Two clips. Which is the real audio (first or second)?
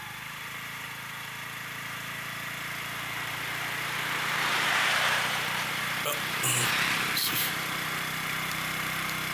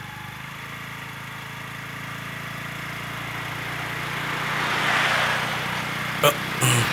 second